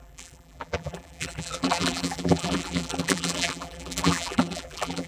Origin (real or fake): fake